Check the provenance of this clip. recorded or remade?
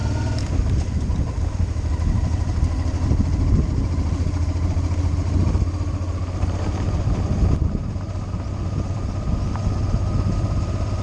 recorded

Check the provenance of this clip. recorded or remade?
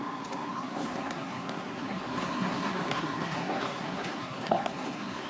remade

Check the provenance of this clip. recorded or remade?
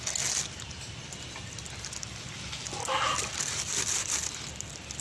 recorded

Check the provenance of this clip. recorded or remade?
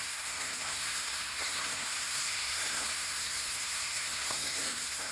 remade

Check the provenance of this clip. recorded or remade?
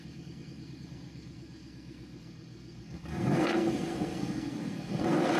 remade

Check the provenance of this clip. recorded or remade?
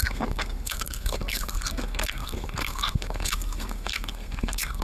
remade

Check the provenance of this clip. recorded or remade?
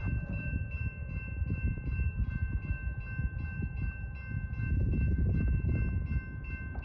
recorded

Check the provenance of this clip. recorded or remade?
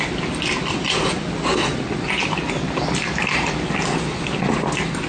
recorded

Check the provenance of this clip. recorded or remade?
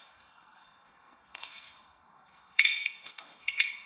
remade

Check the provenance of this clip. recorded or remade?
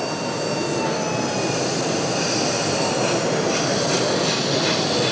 recorded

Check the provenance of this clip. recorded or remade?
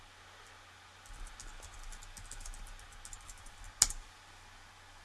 recorded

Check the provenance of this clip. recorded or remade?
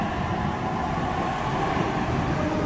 recorded